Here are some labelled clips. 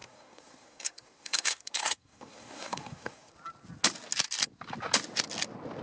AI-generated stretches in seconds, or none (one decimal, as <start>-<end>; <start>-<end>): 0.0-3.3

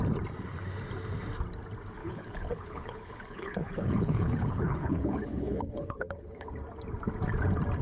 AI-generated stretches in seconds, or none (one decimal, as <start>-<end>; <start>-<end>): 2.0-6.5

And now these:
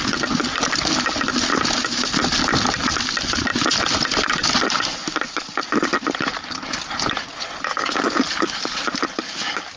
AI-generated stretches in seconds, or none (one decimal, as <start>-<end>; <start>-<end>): 8.2-9.0

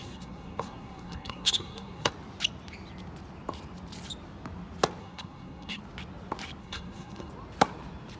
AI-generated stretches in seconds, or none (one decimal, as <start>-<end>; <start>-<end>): 0.0-2.1; 5.0-5.8; 6.6-7.3

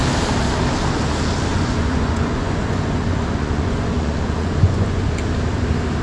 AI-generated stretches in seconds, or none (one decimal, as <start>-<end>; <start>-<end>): 1.5-5.1

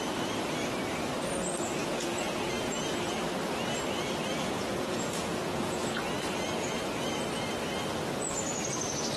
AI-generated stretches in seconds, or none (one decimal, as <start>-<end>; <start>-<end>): 1.8-2.9; 4.3-6.0